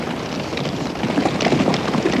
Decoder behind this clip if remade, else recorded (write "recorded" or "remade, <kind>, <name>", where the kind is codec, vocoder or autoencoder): recorded